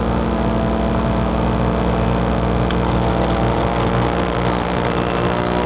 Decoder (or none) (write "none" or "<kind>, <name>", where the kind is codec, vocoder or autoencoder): none